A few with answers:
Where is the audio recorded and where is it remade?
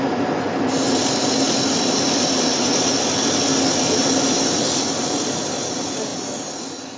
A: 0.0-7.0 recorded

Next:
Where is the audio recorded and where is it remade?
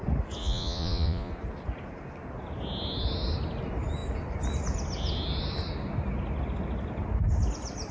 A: 0.0-0.4 recorded; 0.4-1.3 remade; 1.3-7.9 recorded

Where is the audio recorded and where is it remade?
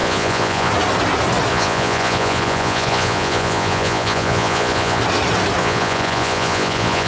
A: 0.0-0.7 remade; 0.7-1.5 recorded; 1.5-5.0 remade; 5.0-5.6 recorded; 5.6-7.1 remade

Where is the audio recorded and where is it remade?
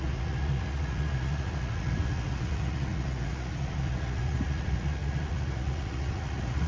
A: 0.0-6.7 remade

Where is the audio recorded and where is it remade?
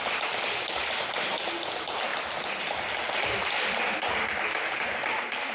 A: 0.0-5.5 recorded